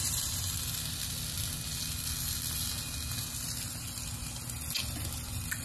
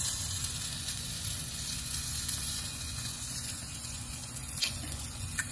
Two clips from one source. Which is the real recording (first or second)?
first